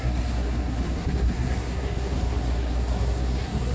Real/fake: fake